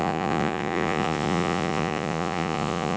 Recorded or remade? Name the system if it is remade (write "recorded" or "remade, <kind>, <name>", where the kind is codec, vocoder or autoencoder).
remade, vocoder, Vocos